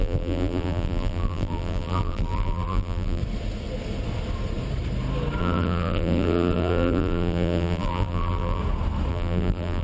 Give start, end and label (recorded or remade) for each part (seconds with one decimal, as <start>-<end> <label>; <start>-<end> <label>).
0.0-3.2 remade; 3.2-5.4 recorded; 5.4-8.6 remade; 8.6-9.1 recorded; 9.1-9.8 remade